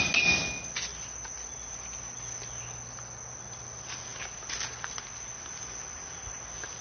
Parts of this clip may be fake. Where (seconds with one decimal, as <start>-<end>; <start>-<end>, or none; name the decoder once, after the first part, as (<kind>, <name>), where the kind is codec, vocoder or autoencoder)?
none